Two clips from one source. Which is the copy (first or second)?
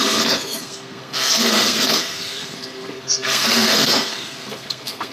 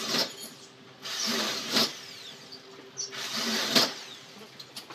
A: first